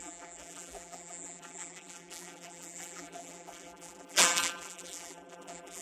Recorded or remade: remade